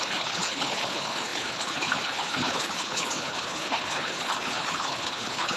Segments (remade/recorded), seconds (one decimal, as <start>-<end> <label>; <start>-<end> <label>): 0.0-5.6 remade